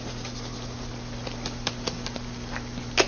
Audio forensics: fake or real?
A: real